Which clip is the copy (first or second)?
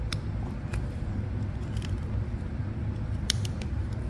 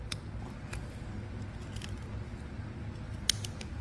first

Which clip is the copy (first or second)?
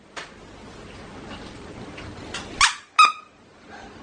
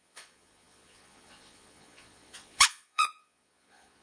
second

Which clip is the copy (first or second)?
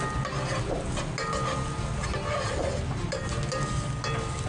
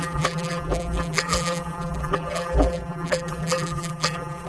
second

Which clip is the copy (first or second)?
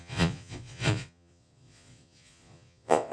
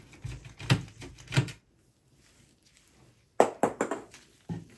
first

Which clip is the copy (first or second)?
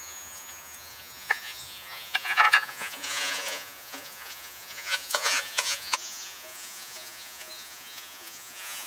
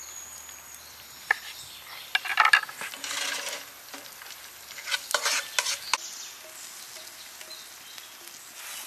first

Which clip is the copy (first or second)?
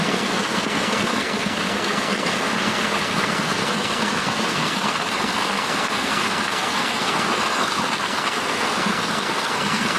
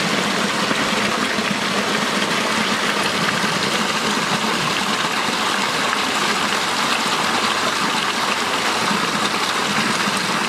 first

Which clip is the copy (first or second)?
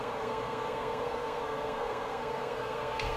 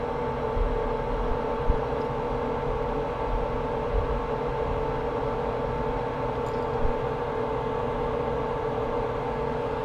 first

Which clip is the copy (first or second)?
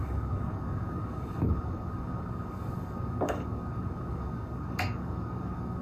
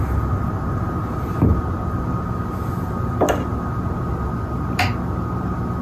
first